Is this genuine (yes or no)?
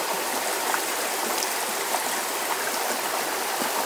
yes